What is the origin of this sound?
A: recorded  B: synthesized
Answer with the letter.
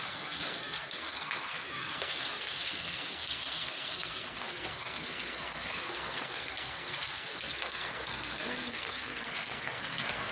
B